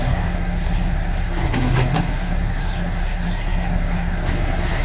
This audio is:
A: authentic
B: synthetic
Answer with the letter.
B